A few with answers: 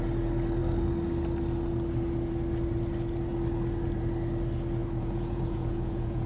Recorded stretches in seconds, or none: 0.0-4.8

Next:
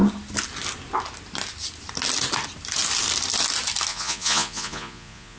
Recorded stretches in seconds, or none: 0.0-3.9

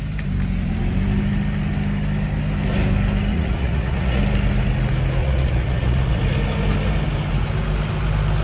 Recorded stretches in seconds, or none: 0.0-3.3; 4.2-5.2; 6.2-8.4

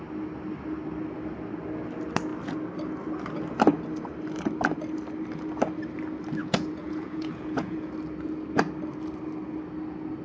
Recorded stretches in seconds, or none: 0.0-6.4; 7.9-10.2

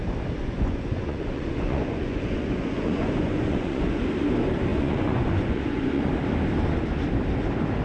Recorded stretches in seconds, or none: 0.0-0.4; 4.0-4.7; 6.1-7.8